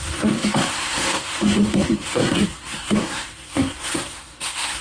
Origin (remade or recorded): remade